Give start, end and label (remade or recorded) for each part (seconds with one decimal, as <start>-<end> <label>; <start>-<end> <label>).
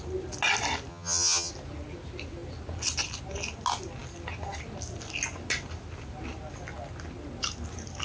0.0-0.9 recorded; 0.9-1.5 remade; 1.5-8.0 recorded